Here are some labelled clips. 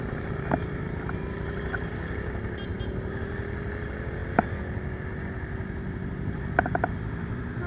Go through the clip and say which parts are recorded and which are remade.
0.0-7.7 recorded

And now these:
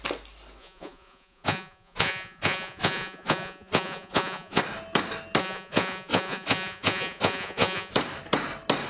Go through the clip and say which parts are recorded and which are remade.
0.0-0.6 recorded; 0.6-4.6 remade; 4.6-5.4 recorded; 5.4-7.9 remade; 7.9-8.9 recorded